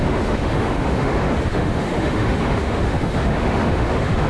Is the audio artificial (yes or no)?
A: yes